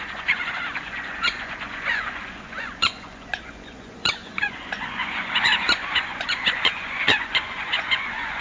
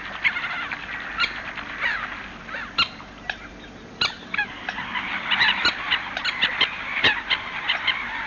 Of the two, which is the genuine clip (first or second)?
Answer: second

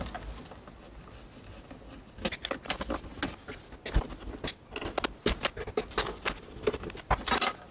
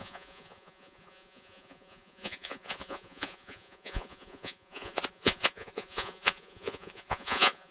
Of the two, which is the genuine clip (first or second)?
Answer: first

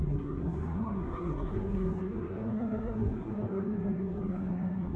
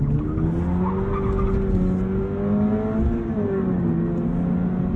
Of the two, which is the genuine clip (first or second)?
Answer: second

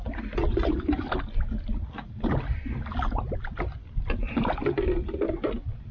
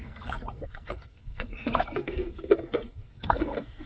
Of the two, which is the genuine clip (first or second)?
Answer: first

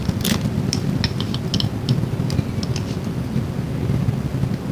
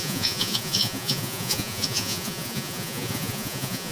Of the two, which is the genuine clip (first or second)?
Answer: first